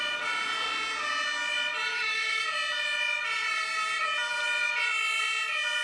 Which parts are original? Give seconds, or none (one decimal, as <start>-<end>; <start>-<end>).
0.0-1.9; 2.4-5.8